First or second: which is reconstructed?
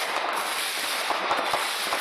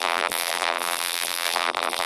second